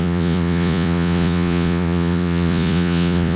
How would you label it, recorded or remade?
remade